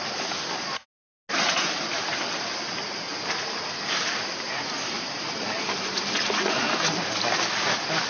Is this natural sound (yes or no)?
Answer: yes